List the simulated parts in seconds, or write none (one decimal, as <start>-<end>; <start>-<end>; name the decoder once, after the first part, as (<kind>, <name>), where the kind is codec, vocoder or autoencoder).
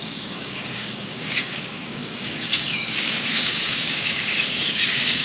0.0-5.2 (codec, DAC)